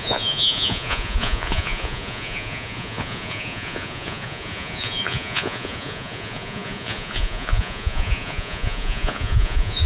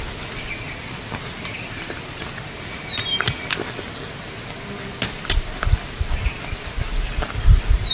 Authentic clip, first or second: second